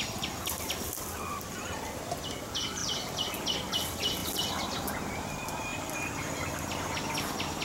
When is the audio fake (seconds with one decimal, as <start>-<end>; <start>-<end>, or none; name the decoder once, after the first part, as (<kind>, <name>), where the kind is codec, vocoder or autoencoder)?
2.8-3.7 (vocoder, BigVGAN v2)